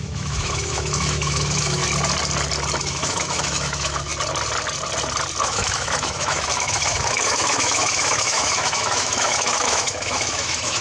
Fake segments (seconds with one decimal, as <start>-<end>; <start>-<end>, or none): 0.0-1.8; 2.8-4.1; 5.4-10.8